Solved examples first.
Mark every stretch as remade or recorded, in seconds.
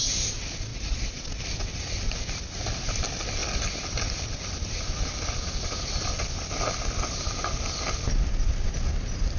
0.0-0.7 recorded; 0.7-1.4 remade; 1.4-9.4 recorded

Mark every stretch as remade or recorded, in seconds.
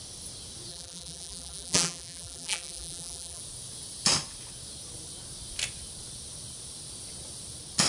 0.0-0.7 recorded; 0.7-3.4 remade; 3.4-7.9 recorded